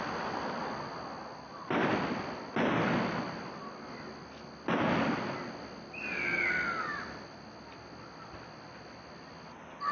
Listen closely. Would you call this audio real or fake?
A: real